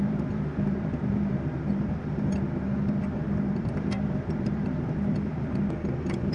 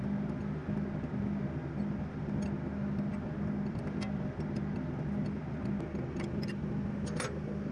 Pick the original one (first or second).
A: second